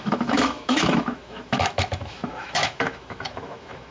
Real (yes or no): no